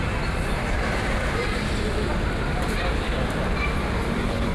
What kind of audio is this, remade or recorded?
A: remade